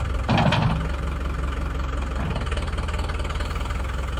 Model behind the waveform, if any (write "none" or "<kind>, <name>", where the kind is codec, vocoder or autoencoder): none